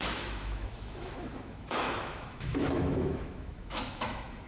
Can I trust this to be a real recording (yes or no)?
no